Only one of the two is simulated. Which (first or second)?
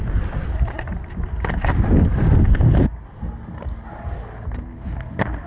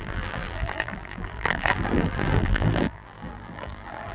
second